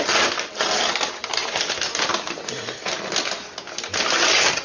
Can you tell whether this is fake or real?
real